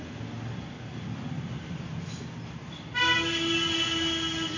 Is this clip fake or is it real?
real